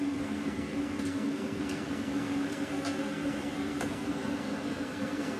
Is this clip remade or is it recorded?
remade